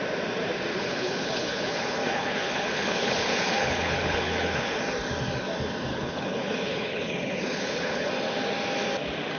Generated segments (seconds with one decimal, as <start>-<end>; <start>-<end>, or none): 0.7-4.8; 5.9-8.1